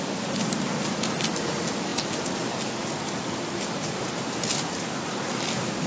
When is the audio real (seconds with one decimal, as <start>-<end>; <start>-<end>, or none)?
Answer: 0.0-5.9